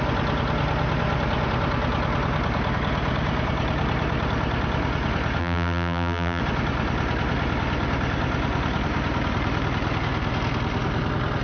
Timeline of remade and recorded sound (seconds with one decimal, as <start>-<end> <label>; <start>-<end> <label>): 0.0-5.4 recorded; 5.4-6.4 remade; 6.4-11.4 recorded